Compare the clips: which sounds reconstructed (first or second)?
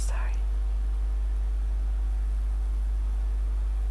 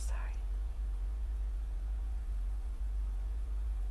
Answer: second